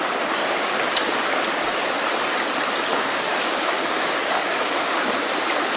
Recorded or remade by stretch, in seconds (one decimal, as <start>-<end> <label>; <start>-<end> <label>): 0.0-0.4 recorded; 0.4-1.3 remade; 1.3-2.9 recorded; 2.9-5.1 remade; 5.1-5.8 recorded